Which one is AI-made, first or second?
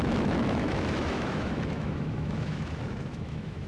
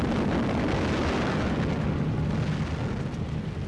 first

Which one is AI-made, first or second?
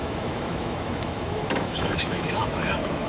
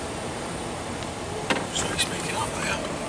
first